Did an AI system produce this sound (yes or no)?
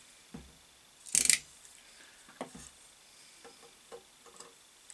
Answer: no